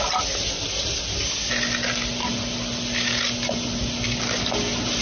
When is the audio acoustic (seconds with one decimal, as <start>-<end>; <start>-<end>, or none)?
0.0-5.0